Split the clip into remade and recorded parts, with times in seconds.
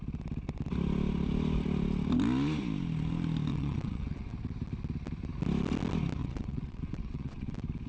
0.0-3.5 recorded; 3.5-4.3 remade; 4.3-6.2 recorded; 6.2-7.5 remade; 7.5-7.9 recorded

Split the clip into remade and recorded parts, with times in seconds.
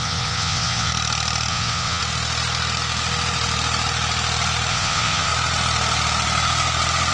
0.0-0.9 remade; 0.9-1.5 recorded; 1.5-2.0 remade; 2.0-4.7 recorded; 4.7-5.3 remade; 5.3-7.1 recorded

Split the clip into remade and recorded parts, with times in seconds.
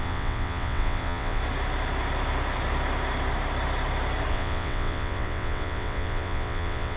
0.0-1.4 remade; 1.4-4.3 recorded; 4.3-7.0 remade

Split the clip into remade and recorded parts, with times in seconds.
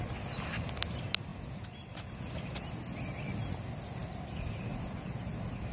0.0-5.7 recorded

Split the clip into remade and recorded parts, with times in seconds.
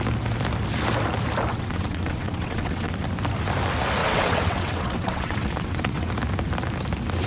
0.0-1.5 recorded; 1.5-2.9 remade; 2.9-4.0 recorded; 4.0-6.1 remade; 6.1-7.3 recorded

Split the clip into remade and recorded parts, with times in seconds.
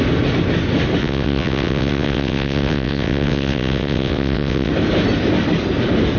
0.0-1.0 recorded; 1.0-4.7 remade; 4.7-6.2 recorded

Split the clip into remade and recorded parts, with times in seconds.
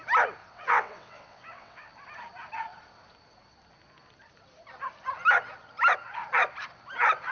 0.0-0.4 recorded; 0.4-1.9 remade; 1.9-7.3 recorded